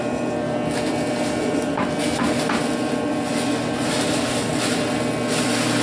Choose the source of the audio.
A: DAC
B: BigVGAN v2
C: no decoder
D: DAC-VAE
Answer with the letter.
C